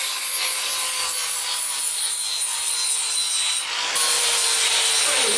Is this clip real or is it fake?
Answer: real